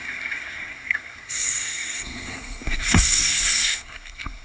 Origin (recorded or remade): remade